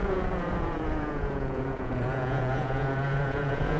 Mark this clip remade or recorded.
remade